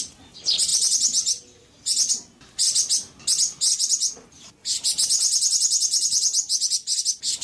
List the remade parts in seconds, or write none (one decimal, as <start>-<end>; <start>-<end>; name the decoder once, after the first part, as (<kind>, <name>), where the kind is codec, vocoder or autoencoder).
none